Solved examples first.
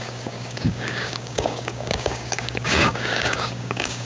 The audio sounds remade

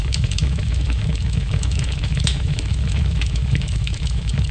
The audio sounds remade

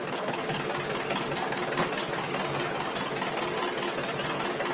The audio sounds recorded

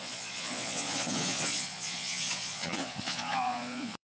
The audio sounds remade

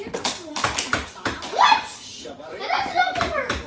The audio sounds remade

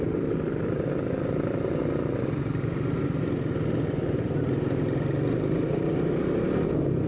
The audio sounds recorded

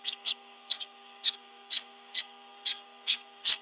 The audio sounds remade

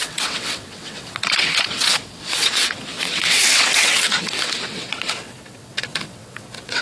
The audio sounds remade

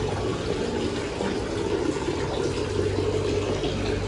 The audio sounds recorded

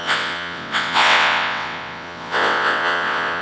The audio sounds remade